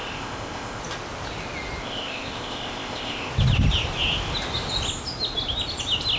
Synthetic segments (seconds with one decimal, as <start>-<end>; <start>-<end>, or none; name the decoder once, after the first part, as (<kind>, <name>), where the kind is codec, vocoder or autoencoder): 0.0-0.8 (codec, ZipCodec); 1.8-3.3